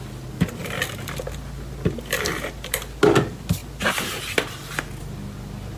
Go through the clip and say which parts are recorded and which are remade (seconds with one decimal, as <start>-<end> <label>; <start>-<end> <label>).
0.0-5.8 recorded

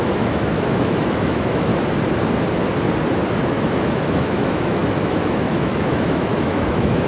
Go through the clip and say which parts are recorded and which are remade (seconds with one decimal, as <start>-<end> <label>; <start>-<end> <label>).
0.0-1.7 remade; 1.7-3.5 recorded; 3.5-7.1 remade

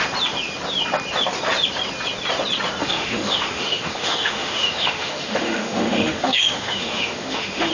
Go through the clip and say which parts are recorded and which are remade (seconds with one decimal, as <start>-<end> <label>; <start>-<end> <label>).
0.0-2.8 recorded; 2.8-7.7 remade

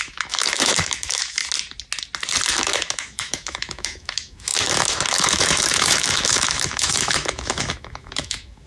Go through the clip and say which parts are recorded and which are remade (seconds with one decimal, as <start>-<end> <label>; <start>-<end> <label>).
0.0-1.4 remade; 1.4-2.5 recorded; 2.5-8.7 remade